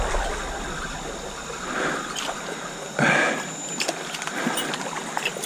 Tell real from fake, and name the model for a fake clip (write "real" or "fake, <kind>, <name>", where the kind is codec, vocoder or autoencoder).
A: real